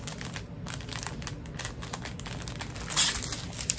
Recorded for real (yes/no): yes